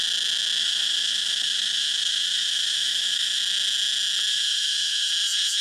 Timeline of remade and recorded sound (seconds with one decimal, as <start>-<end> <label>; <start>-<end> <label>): 0.0-0.6 recorded; 0.6-3.4 remade; 3.4-4.3 recorded; 4.3-5.1 remade; 5.1-5.6 recorded